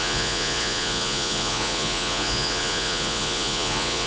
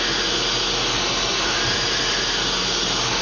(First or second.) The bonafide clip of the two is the second